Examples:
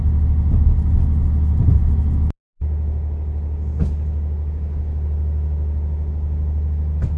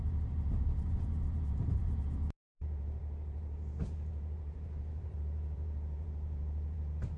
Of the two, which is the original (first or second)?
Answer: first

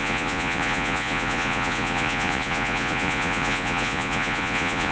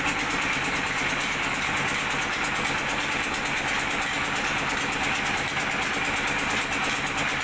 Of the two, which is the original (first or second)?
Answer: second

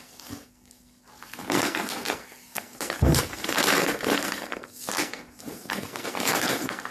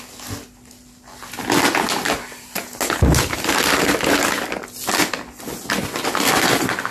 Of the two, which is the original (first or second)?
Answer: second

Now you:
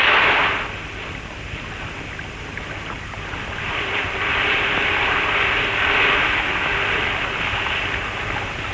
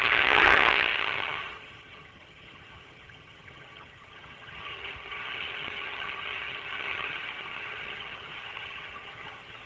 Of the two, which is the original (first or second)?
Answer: first